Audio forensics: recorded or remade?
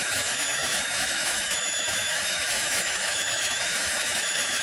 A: remade